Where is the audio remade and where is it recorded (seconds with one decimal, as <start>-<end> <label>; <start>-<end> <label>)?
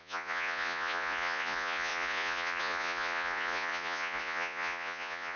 0.0-5.4 remade